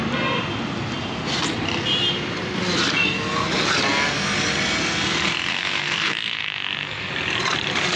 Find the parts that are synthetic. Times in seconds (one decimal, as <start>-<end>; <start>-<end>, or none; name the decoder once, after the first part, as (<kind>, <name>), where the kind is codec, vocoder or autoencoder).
5.5-7.1 (codec, SNAC)